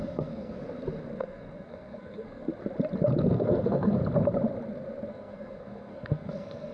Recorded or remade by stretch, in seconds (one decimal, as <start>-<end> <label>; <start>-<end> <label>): 0.0-0.6 remade; 0.6-1.2 recorded; 1.2-2.5 remade; 2.5-3.2 recorded; 3.2-4.0 remade; 4.0-5.1 recorded; 5.1-6.7 remade